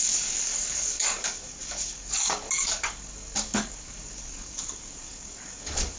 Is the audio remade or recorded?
remade